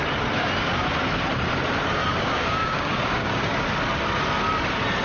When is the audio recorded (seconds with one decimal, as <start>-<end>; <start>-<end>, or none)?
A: 0.0-2.1; 3.5-5.0